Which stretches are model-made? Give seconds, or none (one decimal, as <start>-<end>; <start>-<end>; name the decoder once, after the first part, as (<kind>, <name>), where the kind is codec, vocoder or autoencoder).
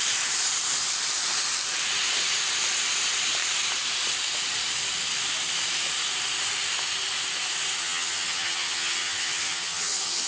7.8-10.3 (vocoder, HiFi-GAN)